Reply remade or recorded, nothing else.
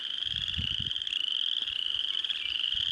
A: recorded